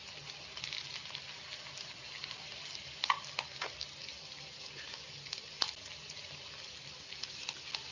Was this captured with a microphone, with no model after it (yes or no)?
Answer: yes